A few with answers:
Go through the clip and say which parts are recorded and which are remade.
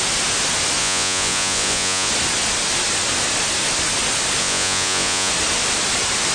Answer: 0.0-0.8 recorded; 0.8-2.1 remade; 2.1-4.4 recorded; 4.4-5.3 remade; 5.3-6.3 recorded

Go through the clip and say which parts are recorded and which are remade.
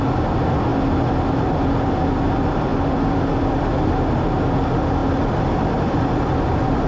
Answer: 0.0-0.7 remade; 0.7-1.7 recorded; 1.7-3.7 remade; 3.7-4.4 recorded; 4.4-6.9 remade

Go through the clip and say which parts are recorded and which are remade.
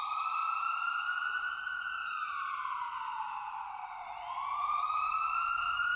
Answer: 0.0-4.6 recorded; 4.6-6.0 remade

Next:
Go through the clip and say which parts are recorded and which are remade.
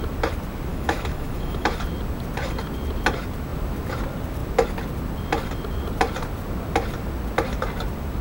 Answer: 0.0-0.7 recorded; 0.7-1.7 remade; 1.7-8.2 recorded